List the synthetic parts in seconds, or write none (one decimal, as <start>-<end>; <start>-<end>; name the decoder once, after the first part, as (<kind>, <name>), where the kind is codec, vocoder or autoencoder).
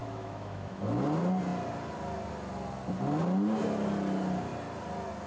0.0-0.8 (autoencoder, DAC-VAE)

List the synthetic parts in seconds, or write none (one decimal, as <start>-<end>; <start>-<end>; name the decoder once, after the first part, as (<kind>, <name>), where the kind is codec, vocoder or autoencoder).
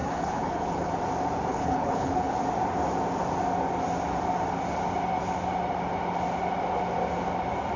0.0-0.9 (codec, HILCodec); 1.5-2.3